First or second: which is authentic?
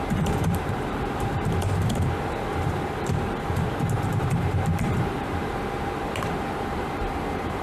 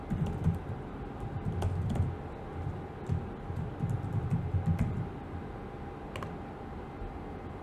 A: second